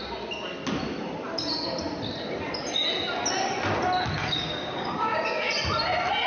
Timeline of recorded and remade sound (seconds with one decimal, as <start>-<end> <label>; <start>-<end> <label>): 0.0-4.2 recorded; 4.2-5.5 remade; 5.5-6.3 recorded